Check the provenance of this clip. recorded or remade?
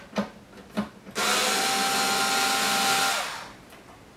recorded